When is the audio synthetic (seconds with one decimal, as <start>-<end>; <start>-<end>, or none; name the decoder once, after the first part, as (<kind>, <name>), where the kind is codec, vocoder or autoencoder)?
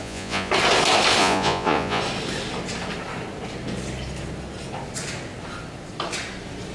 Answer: 0.0-0.5 (vocoder, Vocos); 1.2-2.0